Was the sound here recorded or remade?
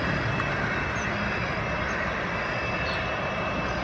recorded